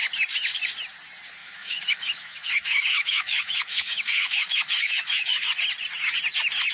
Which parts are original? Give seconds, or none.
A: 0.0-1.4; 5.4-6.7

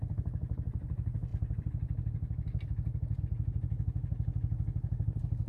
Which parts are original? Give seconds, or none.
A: 0.0-5.5

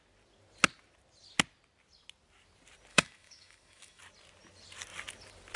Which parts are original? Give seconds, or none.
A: 0.0-2.9; 4.0-5.6

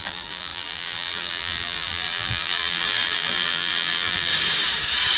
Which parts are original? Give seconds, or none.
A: 4.3-5.2

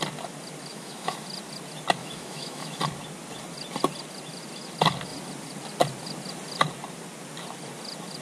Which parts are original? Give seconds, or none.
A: 0.0-0.7; 1.2-2.0; 2.8-8.2

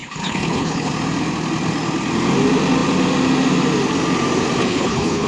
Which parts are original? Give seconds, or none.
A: 0.9-4.6